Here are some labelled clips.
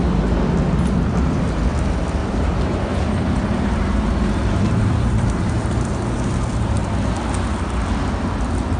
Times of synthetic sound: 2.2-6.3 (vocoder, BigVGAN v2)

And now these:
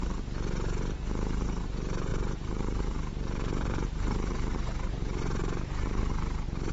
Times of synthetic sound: 2.1-6.1 (vocoder, BigVGAN v2)

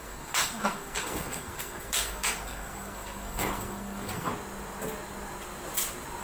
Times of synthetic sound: 0.0-4.3 (codec, SNAC)

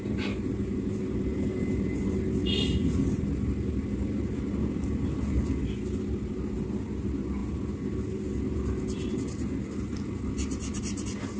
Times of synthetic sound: none

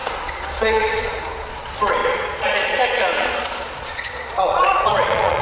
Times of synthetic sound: 0.0-5.4 (vocoder, Vocos)